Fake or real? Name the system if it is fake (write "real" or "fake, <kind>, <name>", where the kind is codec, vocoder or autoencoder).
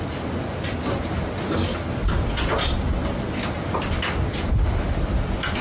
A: real